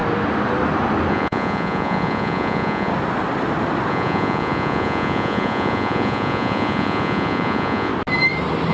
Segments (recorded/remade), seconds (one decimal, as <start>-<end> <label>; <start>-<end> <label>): 0.0-1.1 recorded; 1.1-2.9 remade; 2.9-3.9 recorded; 3.9-7.9 remade; 7.9-8.7 recorded